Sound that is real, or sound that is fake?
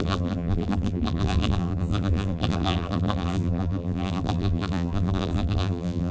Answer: fake